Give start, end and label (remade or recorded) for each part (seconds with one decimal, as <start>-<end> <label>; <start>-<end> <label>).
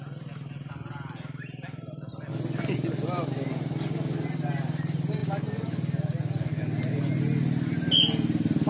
0.0-8.7 recorded